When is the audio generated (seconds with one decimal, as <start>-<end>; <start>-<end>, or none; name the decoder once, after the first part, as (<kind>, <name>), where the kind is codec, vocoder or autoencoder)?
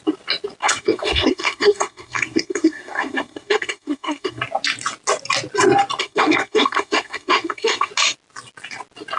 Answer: 0.6-4.4 (codec, SNAC); 6.0-7.9